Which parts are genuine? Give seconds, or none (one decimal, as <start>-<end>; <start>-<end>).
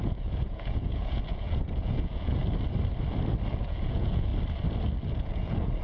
2.4-3.5; 4.3-5.2